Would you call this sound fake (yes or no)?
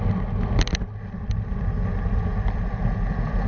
no